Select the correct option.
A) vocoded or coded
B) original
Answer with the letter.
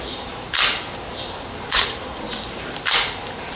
A